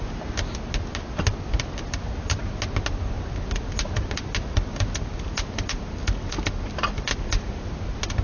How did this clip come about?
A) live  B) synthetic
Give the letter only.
A